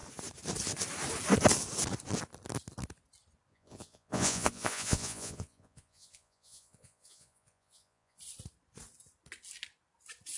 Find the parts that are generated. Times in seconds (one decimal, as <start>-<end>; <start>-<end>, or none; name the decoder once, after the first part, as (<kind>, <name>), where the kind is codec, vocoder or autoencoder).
3.5-8.2 (vocoder, Vocos)